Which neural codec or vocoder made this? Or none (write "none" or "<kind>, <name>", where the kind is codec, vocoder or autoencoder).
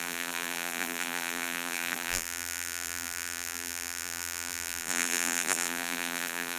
vocoder, BigVGAN v2